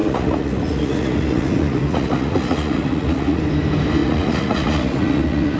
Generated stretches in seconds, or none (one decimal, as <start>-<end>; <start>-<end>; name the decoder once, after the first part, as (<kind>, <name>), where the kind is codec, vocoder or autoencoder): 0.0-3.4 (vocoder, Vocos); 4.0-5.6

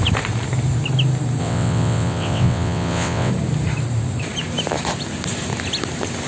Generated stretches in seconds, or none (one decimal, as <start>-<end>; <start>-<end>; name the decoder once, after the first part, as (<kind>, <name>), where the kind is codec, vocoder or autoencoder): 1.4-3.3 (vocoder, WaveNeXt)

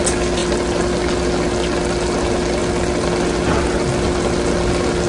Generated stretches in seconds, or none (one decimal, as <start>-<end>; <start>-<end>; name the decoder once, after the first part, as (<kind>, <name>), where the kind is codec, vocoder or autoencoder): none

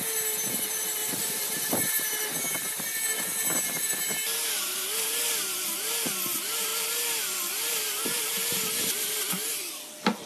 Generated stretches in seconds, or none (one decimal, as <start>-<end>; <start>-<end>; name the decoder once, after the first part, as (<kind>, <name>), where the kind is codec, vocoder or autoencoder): 1.0-1.9 (vocoder, BigVGAN v2)